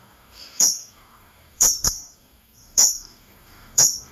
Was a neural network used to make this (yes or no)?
yes